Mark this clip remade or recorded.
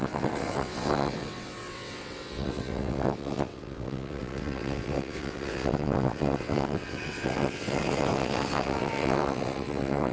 remade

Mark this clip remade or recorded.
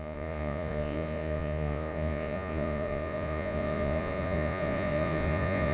remade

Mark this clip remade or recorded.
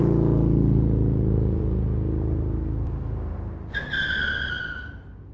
recorded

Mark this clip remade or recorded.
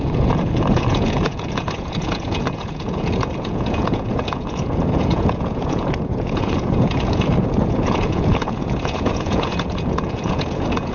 remade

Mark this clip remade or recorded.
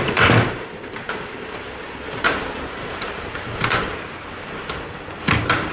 remade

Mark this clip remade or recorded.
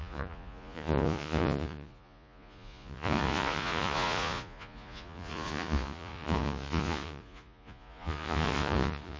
remade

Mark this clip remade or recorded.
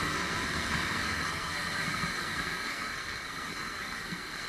remade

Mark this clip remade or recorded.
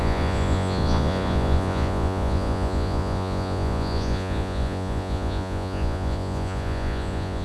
remade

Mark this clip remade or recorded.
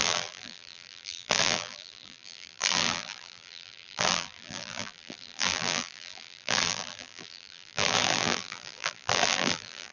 remade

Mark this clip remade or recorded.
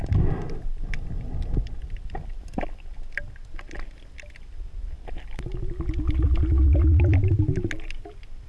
recorded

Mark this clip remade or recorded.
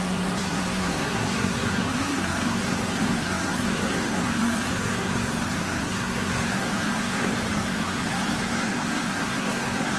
remade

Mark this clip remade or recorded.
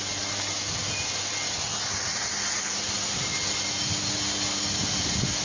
recorded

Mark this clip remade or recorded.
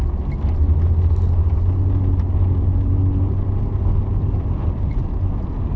recorded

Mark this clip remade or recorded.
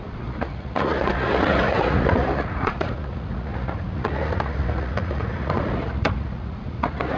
remade